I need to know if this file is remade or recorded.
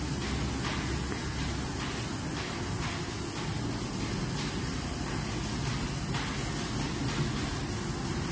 recorded